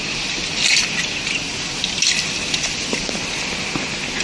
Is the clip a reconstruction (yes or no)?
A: no